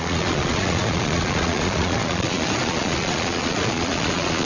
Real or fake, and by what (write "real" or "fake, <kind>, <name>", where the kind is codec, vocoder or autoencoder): fake, vocoder, Vocos